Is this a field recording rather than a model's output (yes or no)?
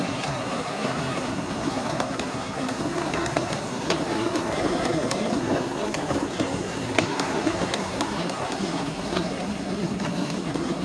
no